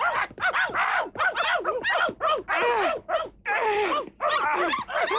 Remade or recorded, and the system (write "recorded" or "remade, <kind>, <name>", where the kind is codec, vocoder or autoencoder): recorded